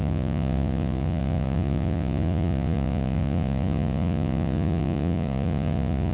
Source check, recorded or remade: remade